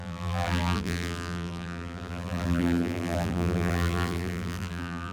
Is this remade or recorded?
remade